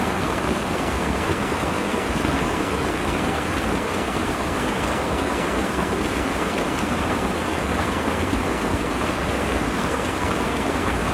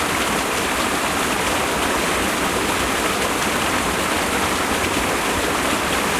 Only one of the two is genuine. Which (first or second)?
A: second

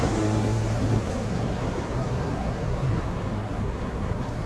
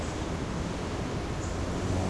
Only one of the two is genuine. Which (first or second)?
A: second